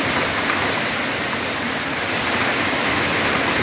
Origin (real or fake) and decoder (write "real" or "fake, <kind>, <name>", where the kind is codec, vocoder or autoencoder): real